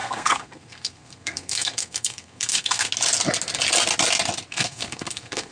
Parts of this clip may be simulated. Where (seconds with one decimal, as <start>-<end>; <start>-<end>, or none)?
0.0-2.9; 4.5-5.5